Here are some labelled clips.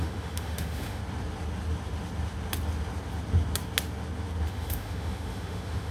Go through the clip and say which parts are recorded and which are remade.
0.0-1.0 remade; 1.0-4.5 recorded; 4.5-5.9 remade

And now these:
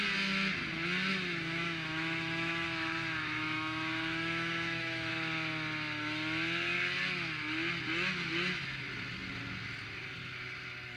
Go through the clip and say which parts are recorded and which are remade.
0.0-1.1 recorded; 1.1-5.1 remade; 5.1-11.0 recorded

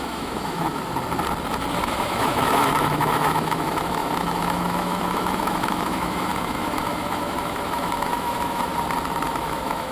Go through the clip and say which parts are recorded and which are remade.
0.0-0.8 remade; 0.8-1.8 recorded; 1.8-8.7 remade; 8.7-9.3 recorded; 9.3-9.9 remade

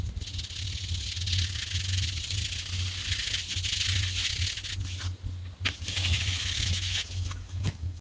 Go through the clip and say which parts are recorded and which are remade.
0.0-6.1 recorded; 6.1-8.0 remade

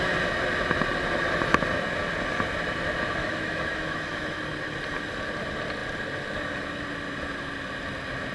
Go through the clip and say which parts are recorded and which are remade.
0.0-3.2 recorded; 3.2-4.4 remade; 4.4-8.3 recorded

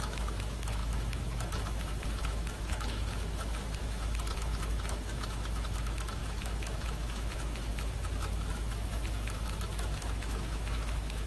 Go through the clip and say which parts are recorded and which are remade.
0.0-11.3 remade

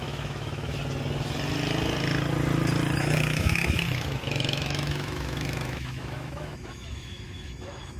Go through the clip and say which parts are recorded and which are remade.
0.0-0.8 remade; 0.8-3.0 recorded; 3.0-8.0 remade

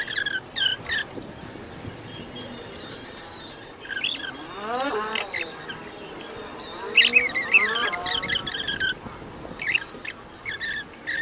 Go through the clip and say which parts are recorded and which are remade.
0.0-11.2 recorded